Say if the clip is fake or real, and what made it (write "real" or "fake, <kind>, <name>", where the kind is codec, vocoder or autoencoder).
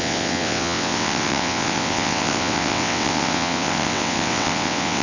fake, vocoder, WaveNeXt